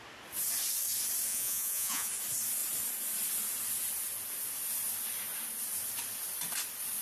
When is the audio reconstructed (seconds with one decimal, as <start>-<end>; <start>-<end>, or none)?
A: 1.3-2.1